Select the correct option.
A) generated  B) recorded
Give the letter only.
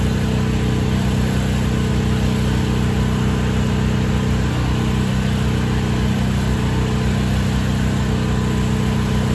B